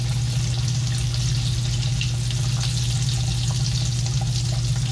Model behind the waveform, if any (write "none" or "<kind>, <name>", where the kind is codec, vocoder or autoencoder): none